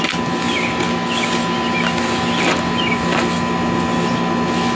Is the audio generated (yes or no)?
no